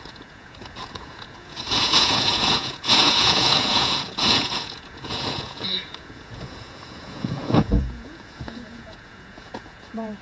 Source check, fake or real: fake